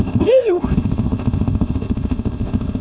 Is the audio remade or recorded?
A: remade